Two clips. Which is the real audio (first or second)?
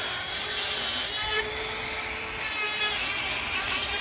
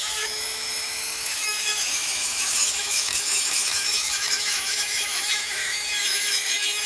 first